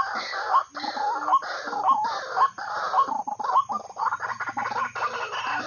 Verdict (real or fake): real